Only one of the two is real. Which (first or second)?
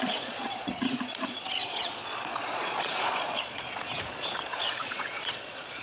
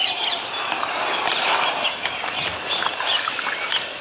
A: second